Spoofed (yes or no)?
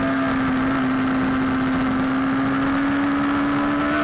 no